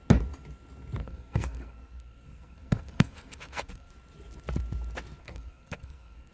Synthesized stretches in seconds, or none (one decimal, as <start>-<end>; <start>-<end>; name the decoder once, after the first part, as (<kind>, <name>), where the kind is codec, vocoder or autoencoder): 1.0-3.9 (codec, SNAC); 5.2-6.3